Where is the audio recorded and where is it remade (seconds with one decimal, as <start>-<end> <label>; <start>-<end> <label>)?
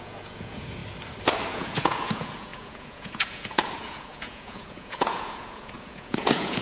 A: 0.0-0.8 remade; 0.8-1.5 recorded; 1.5-6.6 remade